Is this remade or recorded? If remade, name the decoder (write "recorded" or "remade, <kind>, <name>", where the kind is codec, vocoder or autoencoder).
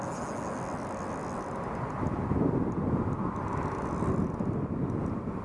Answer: recorded